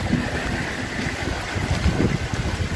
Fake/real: real